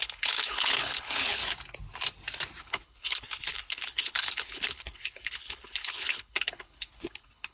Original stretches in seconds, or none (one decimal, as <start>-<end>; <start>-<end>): 1.4-2.6

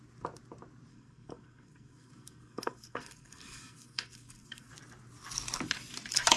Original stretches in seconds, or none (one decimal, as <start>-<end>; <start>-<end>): 0.0-0.9; 4.7-6.4

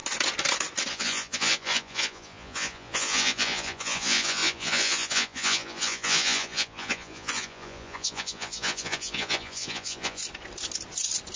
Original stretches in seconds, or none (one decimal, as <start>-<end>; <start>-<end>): 0.0-0.9; 10.2-11.4

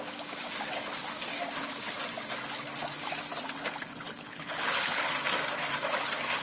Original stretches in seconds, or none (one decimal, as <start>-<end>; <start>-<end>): 0.0-3.8; 5.1-6.4